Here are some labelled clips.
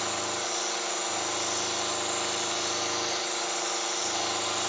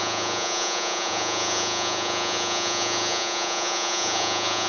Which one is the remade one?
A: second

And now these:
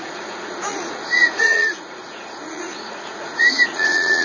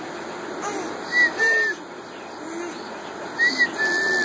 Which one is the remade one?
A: first